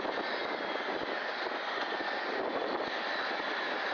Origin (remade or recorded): recorded